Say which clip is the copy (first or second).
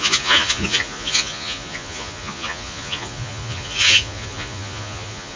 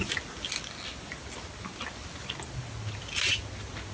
first